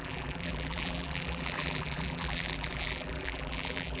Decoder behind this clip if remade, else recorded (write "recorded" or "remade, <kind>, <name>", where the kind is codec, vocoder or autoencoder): remade, vocoder, BigVGAN v2